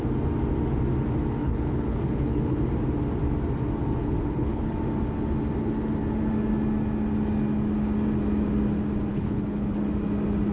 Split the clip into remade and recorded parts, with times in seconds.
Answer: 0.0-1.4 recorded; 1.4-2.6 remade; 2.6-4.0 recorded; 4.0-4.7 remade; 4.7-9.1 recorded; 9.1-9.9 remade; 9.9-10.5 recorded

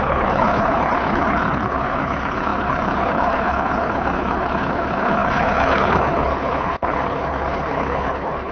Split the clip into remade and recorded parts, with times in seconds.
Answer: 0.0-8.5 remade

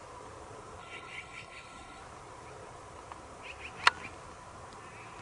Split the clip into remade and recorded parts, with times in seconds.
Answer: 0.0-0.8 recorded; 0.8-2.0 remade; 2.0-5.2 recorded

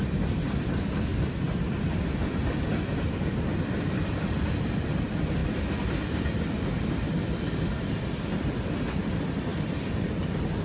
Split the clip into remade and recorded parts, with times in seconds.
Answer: 0.0-10.6 recorded

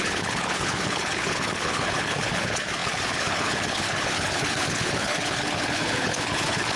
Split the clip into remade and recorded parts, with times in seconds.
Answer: 0.0-6.8 remade

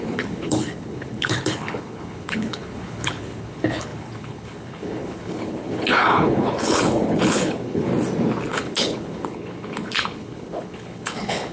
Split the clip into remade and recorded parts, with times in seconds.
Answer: 0.0-7.9 remade; 7.9-8.5 recorded; 8.5-11.5 remade

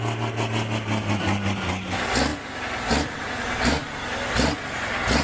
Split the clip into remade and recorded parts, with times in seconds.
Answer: 0.0-5.2 recorded